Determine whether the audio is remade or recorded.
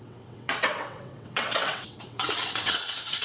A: remade